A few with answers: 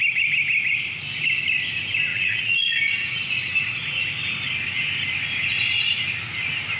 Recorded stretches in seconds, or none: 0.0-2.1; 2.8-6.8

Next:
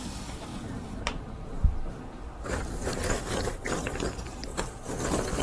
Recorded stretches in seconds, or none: 4.5-5.4